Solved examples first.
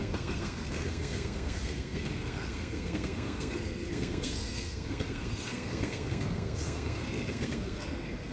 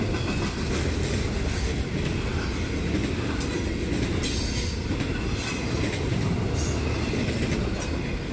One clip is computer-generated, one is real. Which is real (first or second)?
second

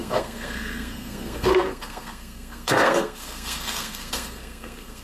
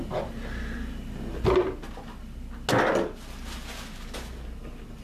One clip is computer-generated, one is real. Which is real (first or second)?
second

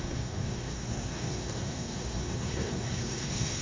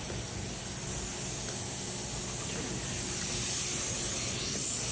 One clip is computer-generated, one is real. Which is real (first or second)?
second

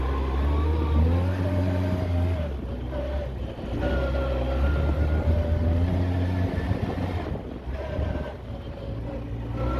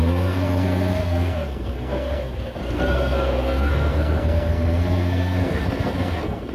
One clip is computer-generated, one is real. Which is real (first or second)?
first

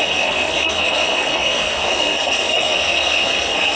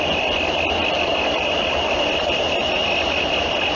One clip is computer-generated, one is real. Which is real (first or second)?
second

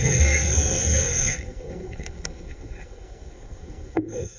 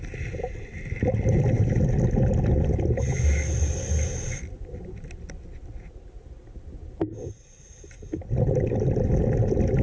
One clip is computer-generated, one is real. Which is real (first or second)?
second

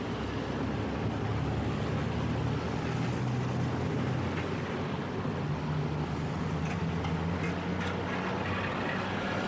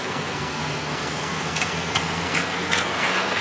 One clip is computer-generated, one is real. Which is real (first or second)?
first